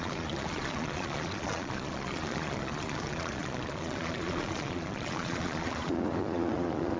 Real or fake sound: fake